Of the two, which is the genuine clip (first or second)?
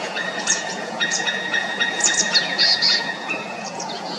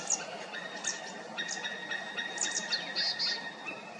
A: second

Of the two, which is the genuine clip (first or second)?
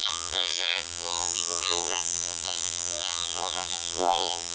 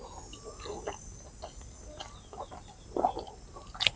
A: second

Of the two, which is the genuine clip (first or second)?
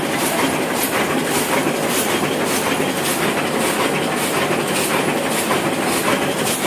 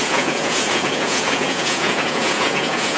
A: first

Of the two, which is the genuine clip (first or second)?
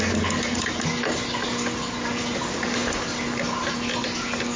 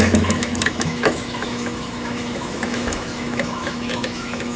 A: first